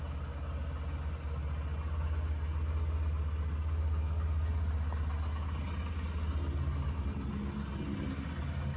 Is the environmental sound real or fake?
real